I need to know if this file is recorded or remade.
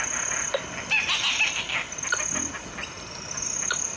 recorded